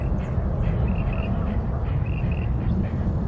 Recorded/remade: recorded